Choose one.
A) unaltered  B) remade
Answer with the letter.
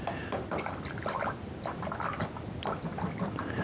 A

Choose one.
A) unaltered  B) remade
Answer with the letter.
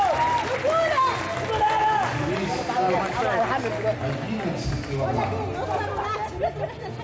A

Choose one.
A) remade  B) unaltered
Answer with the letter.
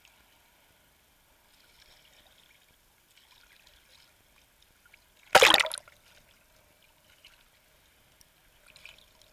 B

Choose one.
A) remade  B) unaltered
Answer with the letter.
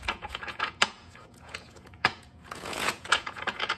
A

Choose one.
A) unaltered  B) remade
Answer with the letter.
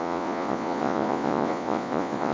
B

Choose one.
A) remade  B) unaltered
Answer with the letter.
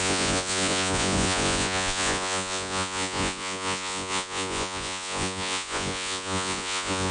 A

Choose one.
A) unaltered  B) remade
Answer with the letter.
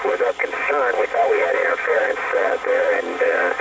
B